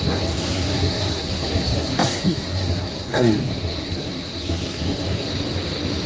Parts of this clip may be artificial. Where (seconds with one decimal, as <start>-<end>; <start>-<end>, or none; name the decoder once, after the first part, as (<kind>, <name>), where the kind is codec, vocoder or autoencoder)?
0.0-5.3 (codec, SNAC)